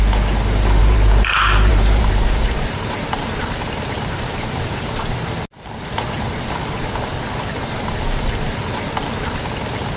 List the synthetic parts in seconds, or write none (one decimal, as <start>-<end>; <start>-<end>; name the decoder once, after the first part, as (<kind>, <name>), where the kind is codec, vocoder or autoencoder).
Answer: 0.8-4.9 (vocoder, BigVGAN v2)